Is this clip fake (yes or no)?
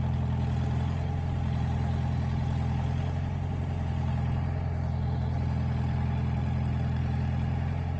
no